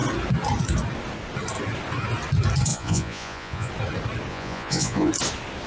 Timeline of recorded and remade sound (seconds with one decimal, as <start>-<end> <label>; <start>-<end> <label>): 0.0-2.7 recorded; 2.7-3.7 remade; 3.7-4.3 recorded; 4.3-5.1 remade; 5.1-5.7 recorded